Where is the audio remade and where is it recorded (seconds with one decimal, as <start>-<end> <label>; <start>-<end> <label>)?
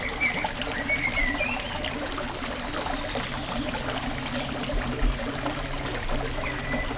0.0-7.0 recorded